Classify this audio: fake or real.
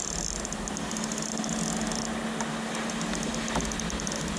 real